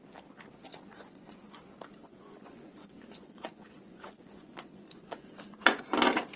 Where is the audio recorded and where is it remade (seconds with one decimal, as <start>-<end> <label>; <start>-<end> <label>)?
0.0-0.7 recorded; 0.7-1.6 remade; 1.6-2.0 recorded; 2.0-5.8 remade; 5.8-6.4 recorded